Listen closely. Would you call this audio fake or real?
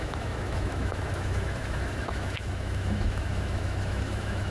fake